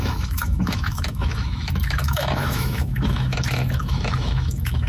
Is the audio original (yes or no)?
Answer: no